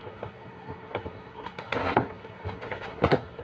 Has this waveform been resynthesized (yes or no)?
yes